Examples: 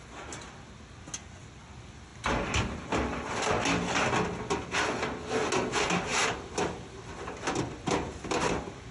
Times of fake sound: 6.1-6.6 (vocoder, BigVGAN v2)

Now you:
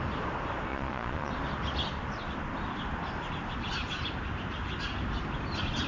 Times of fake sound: 0.7-1.3 (vocoder, Vocos)

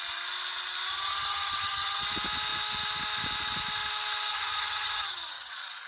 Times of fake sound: 0.9-2.0 (vocoder, HiFi-GAN); 4.3-5.5

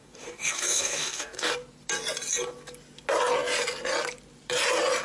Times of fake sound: 0.0-1.5 (codec, DAC)

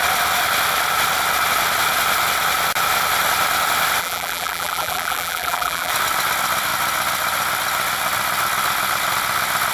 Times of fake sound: 4.0-5.9 (vocoder, BigVGAN v2)

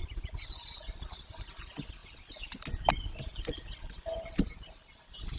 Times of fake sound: 1.2-5.4 (vocoder, BigVGAN v2)

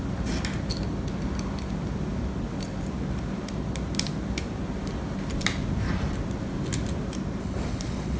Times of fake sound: 7.4-8.2 (codec, HILCodec)

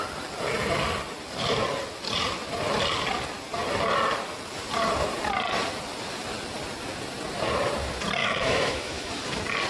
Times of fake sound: 8.2-9.1 (autoencoder, DAC-VAE)